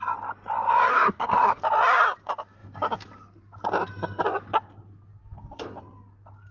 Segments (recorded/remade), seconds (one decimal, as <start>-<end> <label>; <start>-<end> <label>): 0.0-0.9 recorded; 0.9-1.6 remade; 1.6-6.5 recorded